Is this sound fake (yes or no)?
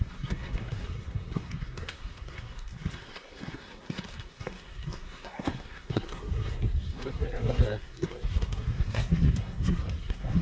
yes